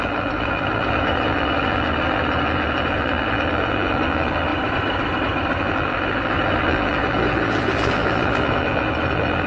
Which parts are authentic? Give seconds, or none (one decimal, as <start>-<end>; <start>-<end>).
4.5-5.6